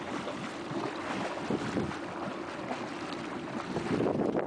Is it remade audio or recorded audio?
recorded